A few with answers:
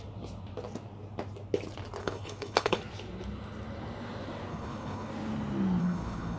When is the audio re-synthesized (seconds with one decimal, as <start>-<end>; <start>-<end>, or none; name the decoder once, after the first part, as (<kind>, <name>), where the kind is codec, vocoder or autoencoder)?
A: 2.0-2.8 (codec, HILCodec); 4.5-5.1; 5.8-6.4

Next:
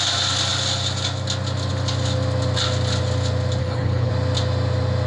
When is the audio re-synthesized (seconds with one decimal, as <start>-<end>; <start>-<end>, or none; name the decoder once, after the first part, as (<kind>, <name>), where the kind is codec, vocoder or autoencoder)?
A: 3.6-4.1 (codec, HILCodec)

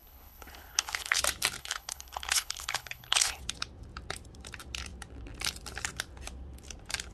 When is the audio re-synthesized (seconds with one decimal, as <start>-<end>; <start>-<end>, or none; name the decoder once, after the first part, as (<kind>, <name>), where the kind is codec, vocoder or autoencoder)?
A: 0.0-1.2 (codec, HILCodec); 1.6-3.4